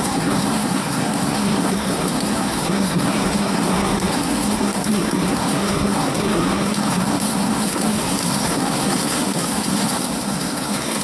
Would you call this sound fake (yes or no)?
yes